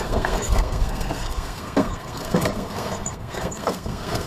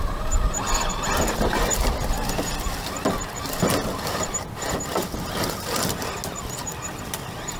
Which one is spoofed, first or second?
first